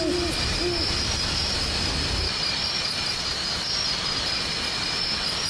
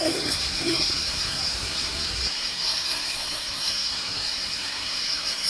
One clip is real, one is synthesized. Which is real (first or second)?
first